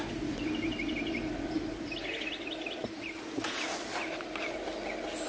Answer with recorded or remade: recorded